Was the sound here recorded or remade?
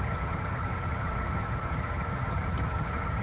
remade